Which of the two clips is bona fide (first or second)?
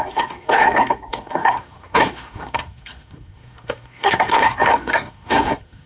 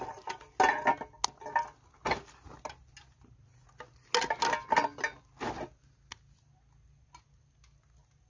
second